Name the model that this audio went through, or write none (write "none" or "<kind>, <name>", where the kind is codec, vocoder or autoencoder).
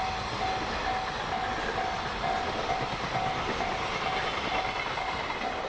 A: none